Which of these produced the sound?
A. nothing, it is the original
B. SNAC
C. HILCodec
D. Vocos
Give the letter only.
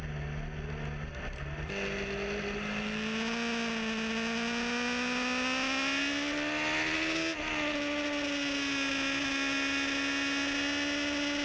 A